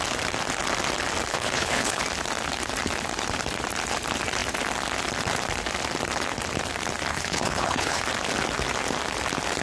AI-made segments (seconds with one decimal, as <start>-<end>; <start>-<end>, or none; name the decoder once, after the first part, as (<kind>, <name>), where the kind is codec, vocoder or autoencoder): 1.3-2.0 (codec, HILCodec); 7.1-8.0